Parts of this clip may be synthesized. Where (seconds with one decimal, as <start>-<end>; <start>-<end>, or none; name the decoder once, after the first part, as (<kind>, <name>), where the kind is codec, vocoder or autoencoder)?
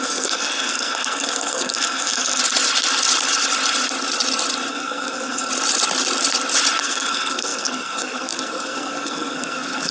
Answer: 0.0-2.4 (codec, SNAC); 4.7-5.5; 6.8-9.9